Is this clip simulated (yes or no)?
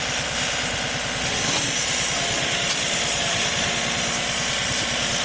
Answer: no